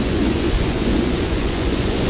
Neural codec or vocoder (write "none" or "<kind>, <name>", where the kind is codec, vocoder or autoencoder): vocoder, Vocos